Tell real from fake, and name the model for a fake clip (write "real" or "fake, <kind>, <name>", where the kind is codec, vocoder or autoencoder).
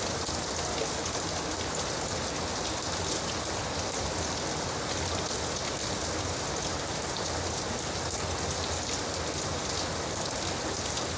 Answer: real